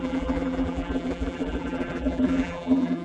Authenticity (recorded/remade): remade